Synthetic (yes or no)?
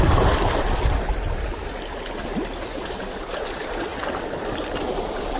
no